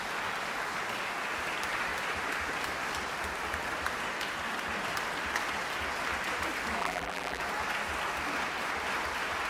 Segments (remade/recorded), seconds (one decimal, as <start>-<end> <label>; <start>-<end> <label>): 0.0-6.8 recorded; 6.8-7.4 remade; 7.4-9.5 recorded